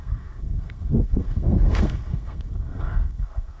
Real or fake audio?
fake